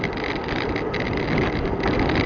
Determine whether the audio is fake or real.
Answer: real